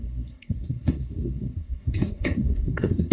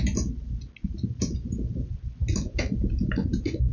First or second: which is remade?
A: first